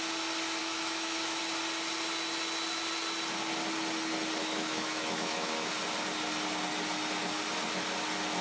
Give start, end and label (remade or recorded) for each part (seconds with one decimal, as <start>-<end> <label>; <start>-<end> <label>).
0.0-0.6 recorded; 0.6-1.4 remade; 1.4-4.4 recorded; 4.4-5.7 remade; 5.7-8.4 recorded